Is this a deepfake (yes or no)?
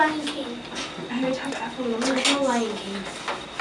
no